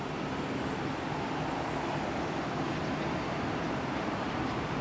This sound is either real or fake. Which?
real